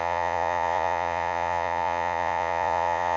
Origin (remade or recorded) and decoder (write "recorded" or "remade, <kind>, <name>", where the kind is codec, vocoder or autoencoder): remade, vocoder, Vocos